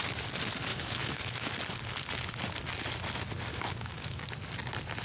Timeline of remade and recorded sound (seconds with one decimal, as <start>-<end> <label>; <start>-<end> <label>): 0.0-0.7 recorded; 0.7-1.5 remade; 1.5-3.5 recorded; 3.5-4.2 remade; 4.2-5.0 recorded